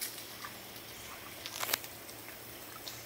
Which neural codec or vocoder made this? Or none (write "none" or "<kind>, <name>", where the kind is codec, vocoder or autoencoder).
none